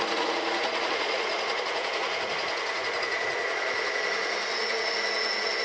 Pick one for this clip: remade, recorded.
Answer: remade